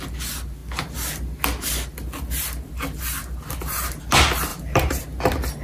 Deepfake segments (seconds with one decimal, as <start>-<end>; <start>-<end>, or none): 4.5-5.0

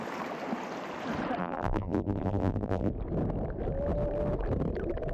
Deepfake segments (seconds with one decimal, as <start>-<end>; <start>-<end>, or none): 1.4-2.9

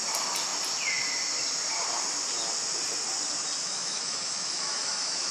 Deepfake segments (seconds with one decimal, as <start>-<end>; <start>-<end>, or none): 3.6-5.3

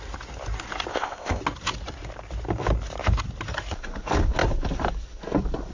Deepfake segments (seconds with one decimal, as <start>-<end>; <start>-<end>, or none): 0.9-1.4

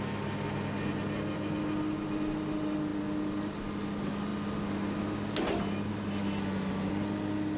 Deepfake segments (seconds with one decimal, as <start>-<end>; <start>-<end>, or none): none